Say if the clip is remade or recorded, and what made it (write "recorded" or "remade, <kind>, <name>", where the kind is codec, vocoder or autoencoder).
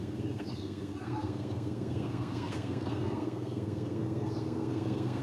remade, codec, SNAC